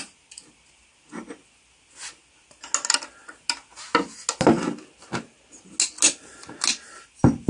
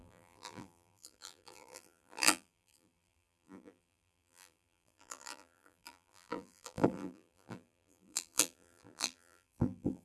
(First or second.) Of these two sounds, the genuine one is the first